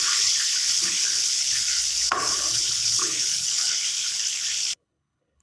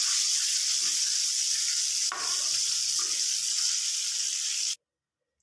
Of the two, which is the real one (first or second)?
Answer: second